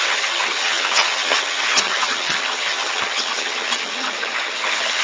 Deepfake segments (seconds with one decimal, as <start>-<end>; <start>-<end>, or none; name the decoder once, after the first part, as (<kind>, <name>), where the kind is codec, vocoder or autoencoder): 0.0-5.0 (vocoder, HiFi-GAN)